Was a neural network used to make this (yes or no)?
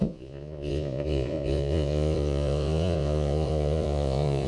yes